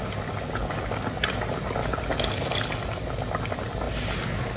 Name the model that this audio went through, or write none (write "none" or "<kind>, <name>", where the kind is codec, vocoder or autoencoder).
none